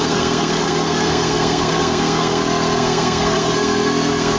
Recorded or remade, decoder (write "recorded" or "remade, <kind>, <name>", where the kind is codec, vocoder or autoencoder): remade, codec, SNAC